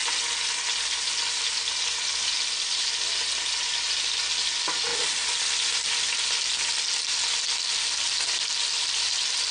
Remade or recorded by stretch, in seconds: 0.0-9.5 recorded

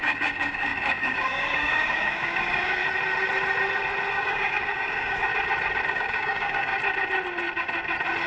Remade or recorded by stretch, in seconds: 0.0-2.8 remade; 2.8-4.1 recorded; 4.1-5.3 remade; 5.3-5.9 recorded; 5.9-6.7 remade; 6.7-8.3 recorded